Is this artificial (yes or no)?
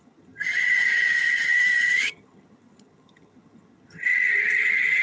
yes